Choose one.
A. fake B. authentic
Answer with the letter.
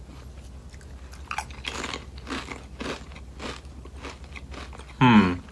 B